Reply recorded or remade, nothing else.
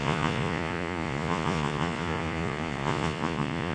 remade